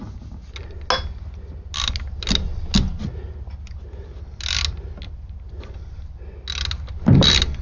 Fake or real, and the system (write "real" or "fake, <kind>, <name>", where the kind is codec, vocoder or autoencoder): real